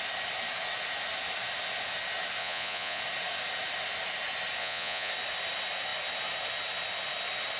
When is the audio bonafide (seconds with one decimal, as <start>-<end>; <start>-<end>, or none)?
0.0-2.4; 3.0-4.6; 5.1-7.6